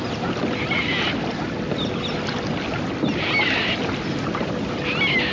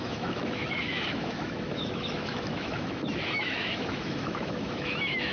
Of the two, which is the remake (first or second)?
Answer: second